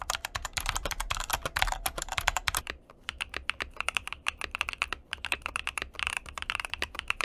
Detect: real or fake fake